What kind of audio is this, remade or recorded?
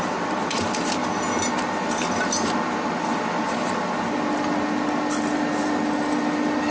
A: recorded